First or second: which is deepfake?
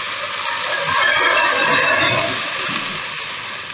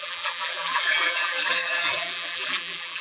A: second